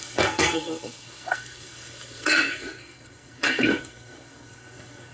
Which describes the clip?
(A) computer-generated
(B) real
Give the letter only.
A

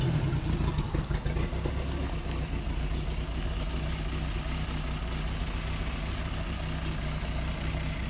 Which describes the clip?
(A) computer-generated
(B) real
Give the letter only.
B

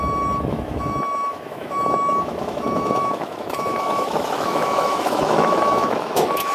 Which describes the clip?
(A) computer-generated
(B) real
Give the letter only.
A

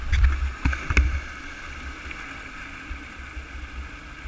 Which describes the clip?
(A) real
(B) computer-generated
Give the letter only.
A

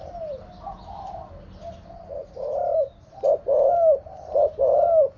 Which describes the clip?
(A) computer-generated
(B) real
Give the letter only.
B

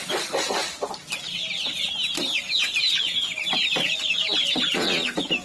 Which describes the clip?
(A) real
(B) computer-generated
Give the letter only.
A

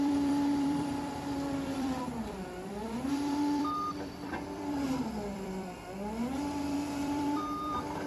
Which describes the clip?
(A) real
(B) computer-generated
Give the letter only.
B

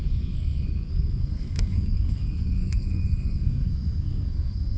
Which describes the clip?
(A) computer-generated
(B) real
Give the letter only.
A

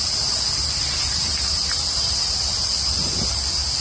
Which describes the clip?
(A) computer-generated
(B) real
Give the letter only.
B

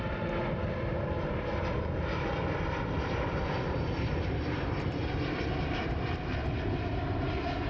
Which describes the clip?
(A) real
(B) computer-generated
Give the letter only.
B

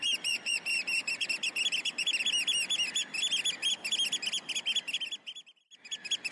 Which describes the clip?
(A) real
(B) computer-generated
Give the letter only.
A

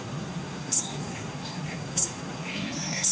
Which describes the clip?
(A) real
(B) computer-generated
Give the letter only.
B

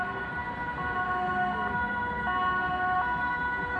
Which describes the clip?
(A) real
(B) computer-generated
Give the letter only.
A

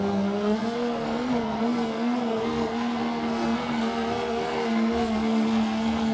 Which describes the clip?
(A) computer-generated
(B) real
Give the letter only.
A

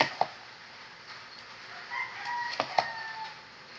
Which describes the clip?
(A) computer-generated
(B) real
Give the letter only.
B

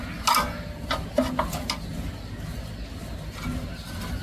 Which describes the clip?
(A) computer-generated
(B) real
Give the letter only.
B